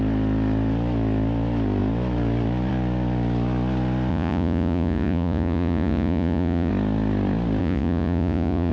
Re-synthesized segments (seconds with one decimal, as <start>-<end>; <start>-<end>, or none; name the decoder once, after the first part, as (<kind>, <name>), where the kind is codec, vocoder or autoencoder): 4.1-6.7 (vocoder, Vocos); 7.6-8.7